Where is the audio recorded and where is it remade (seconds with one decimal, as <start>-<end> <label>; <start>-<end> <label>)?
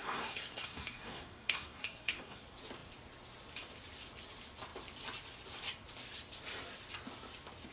0.0-2.4 remade; 2.4-7.7 recorded